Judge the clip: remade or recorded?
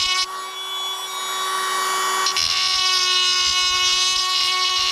recorded